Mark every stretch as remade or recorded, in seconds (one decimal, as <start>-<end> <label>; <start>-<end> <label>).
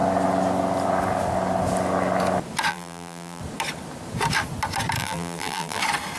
0.0-2.7 recorded; 2.7-3.4 remade; 3.4-5.0 recorded; 5.0-5.8 remade; 5.8-6.2 recorded